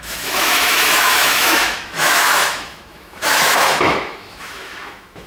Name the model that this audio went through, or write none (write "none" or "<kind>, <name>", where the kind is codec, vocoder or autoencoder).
autoencoder, DAC-VAE